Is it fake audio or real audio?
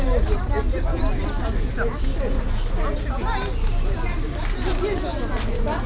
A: real